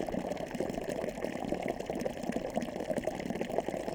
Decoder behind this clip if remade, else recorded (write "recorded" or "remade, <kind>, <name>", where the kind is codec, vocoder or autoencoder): recorded